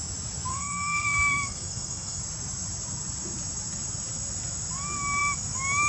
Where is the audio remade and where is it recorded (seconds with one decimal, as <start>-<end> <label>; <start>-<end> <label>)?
0.0-0.5 recorded; 0.5-2.2 remade; 2.2-5.9 recorded